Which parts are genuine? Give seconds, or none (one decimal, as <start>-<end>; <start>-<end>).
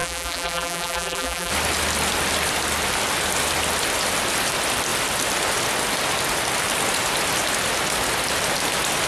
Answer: 1.5-9.1